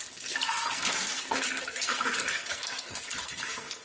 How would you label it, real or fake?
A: fake